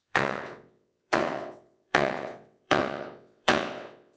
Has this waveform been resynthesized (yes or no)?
yes